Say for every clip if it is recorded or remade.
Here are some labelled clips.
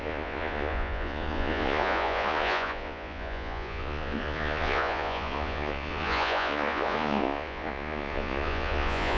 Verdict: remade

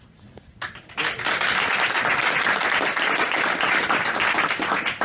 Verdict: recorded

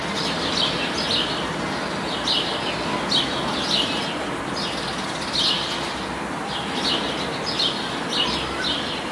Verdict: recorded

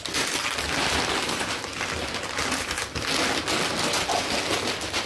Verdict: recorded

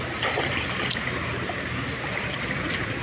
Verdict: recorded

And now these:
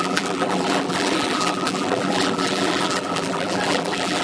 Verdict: remade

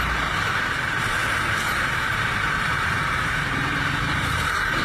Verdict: remade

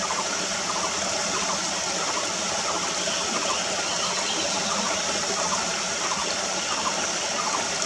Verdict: recorded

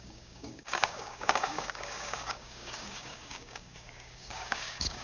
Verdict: remade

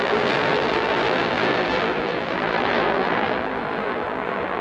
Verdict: remade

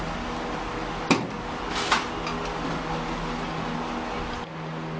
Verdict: recorded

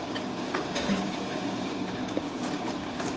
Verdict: remade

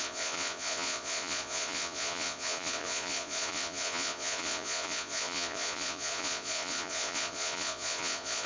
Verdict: remade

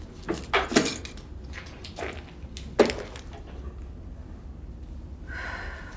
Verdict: recorded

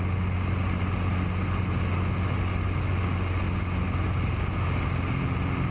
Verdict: recorded